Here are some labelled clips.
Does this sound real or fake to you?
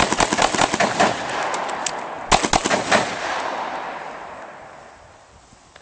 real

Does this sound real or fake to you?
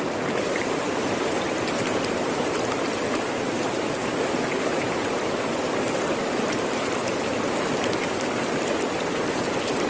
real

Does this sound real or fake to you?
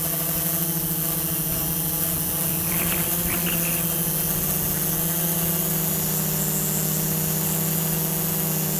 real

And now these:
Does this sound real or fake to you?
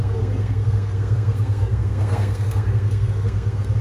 fake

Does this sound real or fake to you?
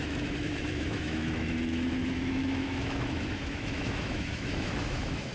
fake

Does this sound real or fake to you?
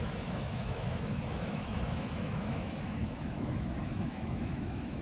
fake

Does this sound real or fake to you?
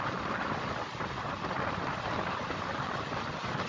real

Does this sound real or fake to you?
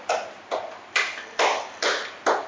real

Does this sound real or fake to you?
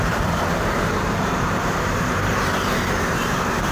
fake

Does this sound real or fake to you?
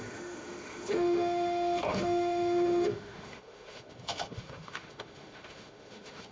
fake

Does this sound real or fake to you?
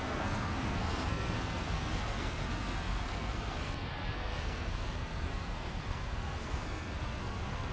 fake